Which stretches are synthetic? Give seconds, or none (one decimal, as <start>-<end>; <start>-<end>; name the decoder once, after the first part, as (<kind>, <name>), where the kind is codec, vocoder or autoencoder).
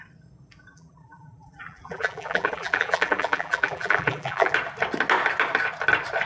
0.7-4.5 (vocoder, BigVGAN v2)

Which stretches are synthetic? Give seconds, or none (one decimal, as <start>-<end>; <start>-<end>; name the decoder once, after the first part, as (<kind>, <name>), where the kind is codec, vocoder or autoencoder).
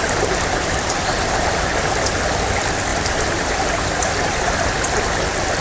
0.6-1.7 (vocoder, BigVGAN v2); 2.9-4.7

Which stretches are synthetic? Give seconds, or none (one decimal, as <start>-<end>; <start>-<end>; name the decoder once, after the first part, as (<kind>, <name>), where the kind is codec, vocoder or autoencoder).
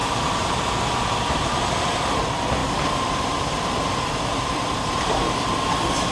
0.0-0.5 (vocoder, BigVGAN v2); 2.6-5.2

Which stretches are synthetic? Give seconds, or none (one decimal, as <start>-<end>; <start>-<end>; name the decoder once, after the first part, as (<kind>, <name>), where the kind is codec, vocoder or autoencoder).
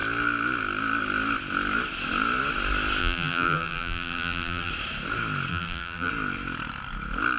3.0-4.7 (vocoder, BigVGAN v2); 5.5-6.1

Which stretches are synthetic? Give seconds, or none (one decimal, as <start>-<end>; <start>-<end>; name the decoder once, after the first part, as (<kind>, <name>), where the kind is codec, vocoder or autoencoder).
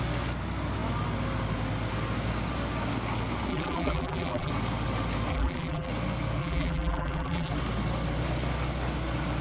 3.5-4.5 (vocoder, BigVGAN v2); 5.3-5.9; 6.4-7.5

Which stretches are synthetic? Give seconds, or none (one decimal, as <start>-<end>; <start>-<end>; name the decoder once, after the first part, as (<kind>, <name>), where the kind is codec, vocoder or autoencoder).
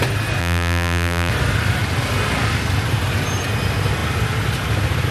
0.4-1.3 (vocoder, BigVGAN v2)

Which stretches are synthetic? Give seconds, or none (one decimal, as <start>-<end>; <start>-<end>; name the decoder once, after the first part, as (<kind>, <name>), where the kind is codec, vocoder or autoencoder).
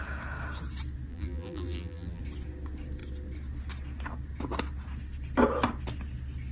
1.1-2.2 (vocoder, BigVGAN v2)